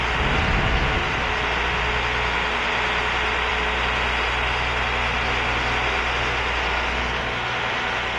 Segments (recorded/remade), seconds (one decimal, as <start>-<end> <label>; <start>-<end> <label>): 0.0-8.2 recorded